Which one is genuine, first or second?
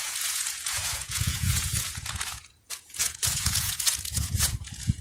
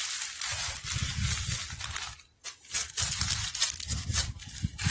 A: second